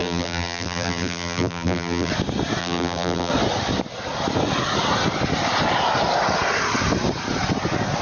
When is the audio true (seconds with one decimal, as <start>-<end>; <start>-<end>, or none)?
2.1-2.6; 3.3-8.0